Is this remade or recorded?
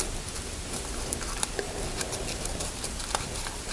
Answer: recorded